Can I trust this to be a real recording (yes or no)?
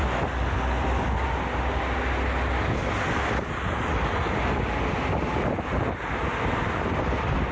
yes